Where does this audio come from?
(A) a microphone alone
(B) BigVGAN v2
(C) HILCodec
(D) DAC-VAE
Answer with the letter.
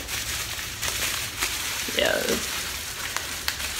B